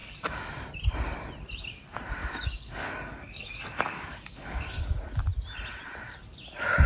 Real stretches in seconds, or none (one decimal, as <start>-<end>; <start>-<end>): 0.5-2.2; 4.8-6.9